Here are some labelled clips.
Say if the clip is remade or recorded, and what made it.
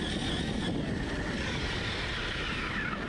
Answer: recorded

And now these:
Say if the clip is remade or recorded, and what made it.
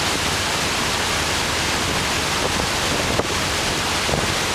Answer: recorded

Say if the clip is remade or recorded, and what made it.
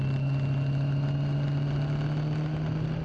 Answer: recorded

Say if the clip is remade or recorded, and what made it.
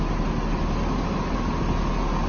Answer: recorded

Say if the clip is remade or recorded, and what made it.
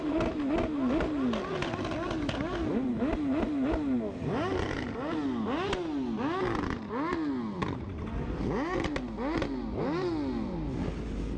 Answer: recorded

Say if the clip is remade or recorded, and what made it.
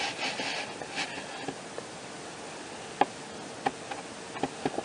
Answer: recorded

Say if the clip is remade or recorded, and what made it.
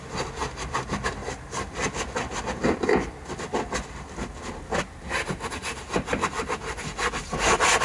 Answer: recorded